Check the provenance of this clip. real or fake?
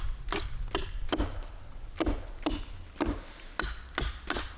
real